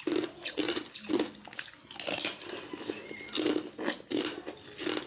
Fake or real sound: real